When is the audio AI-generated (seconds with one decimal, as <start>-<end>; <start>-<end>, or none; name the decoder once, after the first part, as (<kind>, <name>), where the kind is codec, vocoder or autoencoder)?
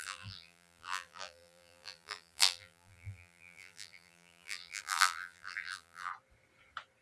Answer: 0.0-6.1 (vocoder, BigVGAN v2)